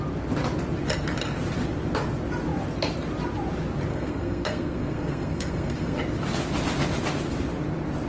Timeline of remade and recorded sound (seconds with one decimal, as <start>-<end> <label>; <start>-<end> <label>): 0.0-3.9 recorded; 3.9-6.0 remade; 6.0-8.1 recorded